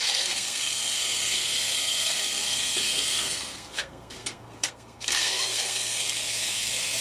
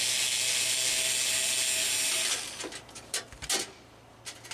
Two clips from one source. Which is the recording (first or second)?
second